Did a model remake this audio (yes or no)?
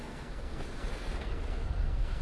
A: yes